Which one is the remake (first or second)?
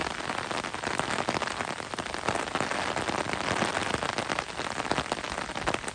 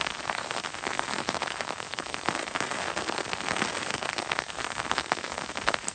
second